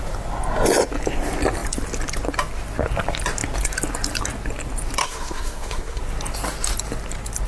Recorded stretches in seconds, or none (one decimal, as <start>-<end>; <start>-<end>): 0.0-5.0; 6.0-7.5